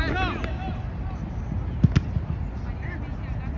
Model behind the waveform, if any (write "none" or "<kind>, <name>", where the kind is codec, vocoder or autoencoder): none